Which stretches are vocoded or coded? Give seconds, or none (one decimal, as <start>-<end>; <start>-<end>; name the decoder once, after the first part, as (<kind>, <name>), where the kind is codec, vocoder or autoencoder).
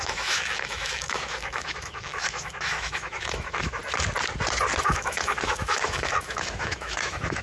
0.0-3.8 (autoencoder, DAC-VAE); 4.8-7.4